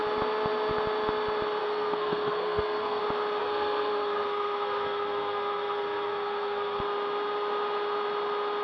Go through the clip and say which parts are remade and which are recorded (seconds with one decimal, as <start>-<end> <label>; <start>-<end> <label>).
0.0-1.6 recorded; 1.6-3.0 remade; 3.0-3.4 recorded; 3.4-6.8 remade; 6.8-8.6 recorded